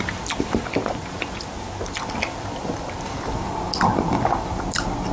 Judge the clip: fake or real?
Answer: fake